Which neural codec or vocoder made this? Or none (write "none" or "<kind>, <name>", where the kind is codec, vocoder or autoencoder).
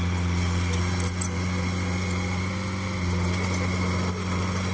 none